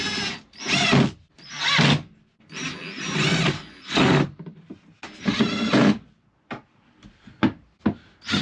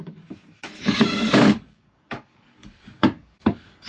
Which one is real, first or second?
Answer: first